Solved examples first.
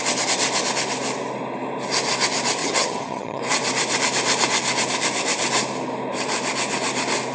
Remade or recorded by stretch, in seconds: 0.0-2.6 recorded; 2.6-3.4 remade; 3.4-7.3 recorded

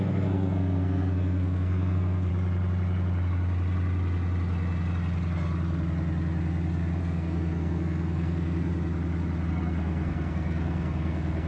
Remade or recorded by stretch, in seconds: 0.0-2.3 remade; 2.3-7.0 recorded; 7.0-8.7 remade; 8.7-9.5 recorded; 9.5-11.5 remade